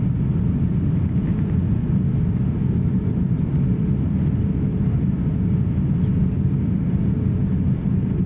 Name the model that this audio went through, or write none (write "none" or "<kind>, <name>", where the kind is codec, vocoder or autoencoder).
none